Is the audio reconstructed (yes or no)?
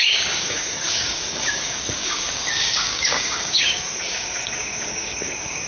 yes